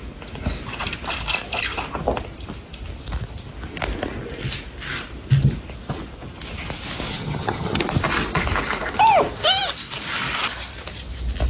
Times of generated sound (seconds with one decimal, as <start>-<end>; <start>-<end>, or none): 7.1-7.8